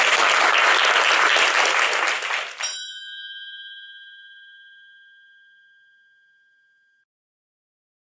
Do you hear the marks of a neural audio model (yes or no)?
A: no